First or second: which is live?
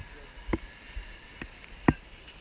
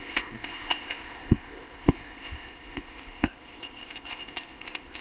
first